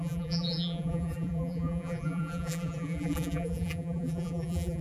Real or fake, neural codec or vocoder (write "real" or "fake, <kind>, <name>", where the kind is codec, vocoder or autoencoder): fake, vocoder, BigVGAN v2